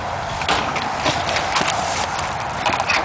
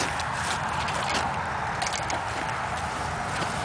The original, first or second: second